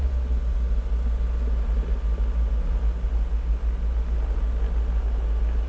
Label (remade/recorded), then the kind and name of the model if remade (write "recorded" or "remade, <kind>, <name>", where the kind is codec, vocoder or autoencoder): recorded